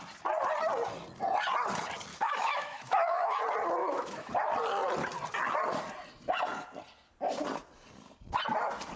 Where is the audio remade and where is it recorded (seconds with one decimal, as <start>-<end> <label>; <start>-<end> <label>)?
0.0-2.1 recorded; 2.1-3.4 remade; 3.4-3.8 recorded; 3.8-4.3 remade; 4.3-9.0 recorded